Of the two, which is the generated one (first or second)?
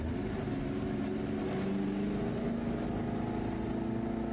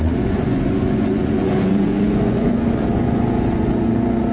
second